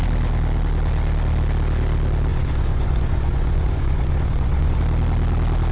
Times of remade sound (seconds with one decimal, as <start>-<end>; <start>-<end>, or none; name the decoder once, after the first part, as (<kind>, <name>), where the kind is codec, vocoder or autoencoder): 2.3-4.8 (vocoder, Vocos)